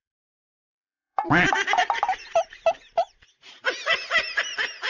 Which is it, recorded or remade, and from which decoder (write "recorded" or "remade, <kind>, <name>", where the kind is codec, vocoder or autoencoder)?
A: remade, vocoder, BigVGAN v2